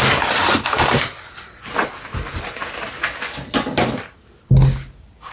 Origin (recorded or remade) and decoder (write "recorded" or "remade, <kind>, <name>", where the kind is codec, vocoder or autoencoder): recorded